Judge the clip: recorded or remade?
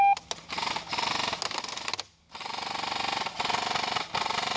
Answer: recorded